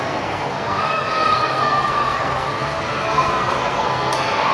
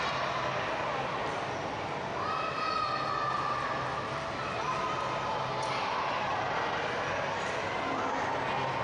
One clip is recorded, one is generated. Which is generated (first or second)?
first